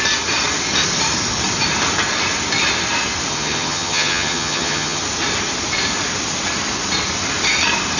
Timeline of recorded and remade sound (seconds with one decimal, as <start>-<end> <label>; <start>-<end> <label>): 0.0-3.3 recorded; 3.3-5.0 remade; 5.0-8.0 recorded